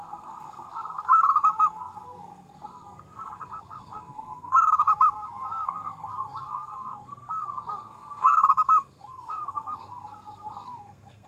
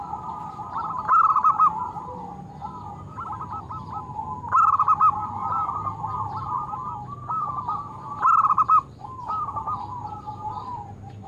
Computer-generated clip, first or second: first